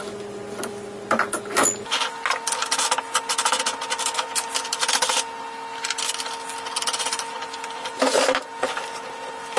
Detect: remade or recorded recorded